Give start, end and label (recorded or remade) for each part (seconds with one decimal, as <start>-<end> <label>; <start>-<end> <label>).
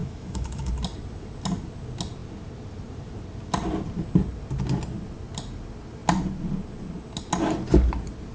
0.0-0.7 remade; 0.7-8.3 recorded